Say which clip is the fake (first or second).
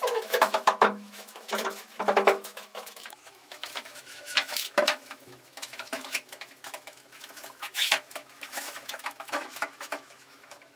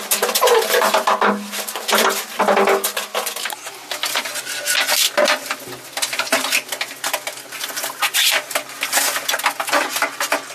first